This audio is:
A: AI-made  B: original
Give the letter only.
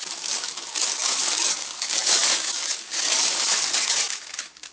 A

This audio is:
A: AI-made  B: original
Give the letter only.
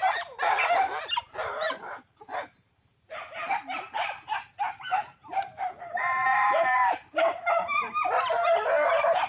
A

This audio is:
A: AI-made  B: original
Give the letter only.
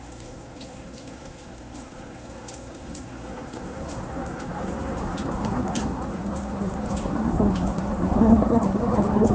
A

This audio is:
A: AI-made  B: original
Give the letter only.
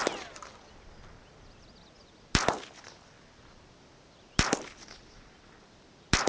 B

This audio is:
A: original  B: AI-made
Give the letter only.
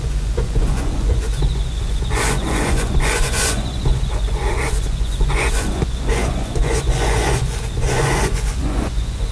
B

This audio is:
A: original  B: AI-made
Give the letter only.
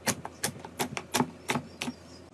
A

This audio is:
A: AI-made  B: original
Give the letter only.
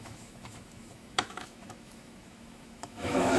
A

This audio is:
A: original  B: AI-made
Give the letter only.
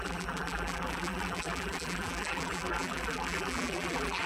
B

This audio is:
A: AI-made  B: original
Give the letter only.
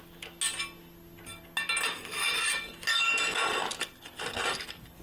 B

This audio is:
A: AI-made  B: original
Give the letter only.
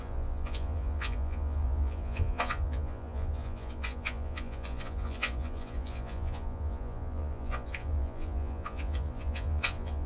A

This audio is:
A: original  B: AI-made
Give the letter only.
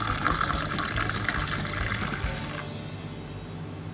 A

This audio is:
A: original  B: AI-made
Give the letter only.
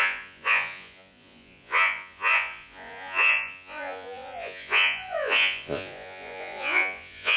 B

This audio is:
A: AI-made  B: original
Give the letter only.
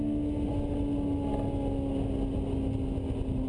B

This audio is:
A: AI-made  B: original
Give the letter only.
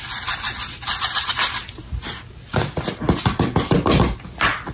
B